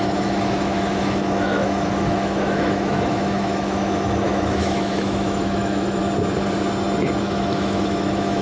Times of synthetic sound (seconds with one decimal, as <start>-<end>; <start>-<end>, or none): 0.0-6.0; 7.2-8.4